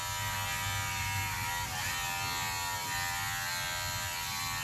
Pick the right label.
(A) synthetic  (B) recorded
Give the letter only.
B